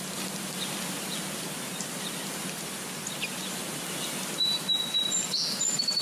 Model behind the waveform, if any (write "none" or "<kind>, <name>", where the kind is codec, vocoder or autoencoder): none